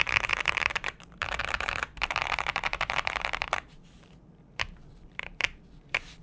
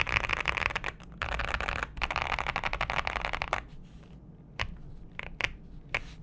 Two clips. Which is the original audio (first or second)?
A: second